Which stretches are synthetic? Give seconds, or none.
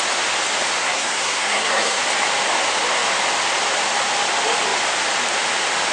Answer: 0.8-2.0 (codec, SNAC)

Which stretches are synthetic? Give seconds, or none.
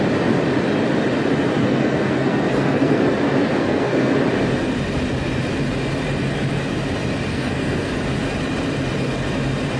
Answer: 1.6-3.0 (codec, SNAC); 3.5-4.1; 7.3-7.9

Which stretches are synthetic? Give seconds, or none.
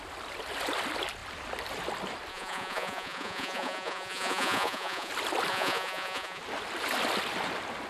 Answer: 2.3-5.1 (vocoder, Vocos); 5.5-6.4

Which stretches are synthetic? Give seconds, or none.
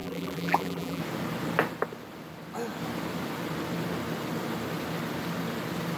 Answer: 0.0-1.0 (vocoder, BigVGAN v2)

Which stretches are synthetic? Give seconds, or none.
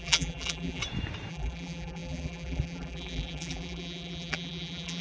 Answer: 0.0-0.8 (vocoder, BigVGAN v2); 1.3-5.0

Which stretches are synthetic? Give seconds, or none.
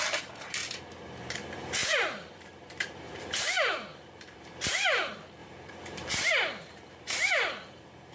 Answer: 0.0-0.6 (vocoder, BigVGAN v2); 1.2-8.1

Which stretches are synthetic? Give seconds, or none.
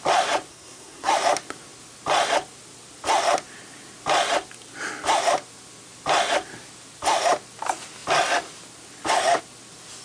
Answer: 0.5-1.1 (codec, SNAC)